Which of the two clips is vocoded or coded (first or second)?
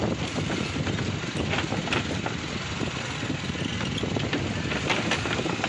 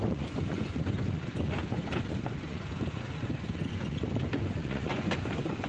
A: second